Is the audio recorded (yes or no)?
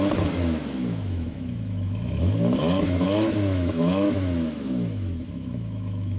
no